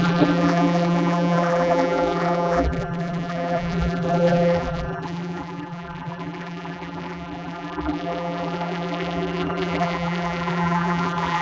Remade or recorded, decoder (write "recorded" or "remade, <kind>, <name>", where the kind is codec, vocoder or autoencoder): remade, vocoder, BigVGAN v2